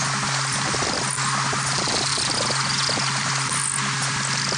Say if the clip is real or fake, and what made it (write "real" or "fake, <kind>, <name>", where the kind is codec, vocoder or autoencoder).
real